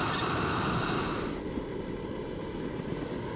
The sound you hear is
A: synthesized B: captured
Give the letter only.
B